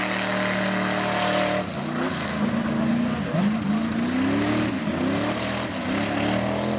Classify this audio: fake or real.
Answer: real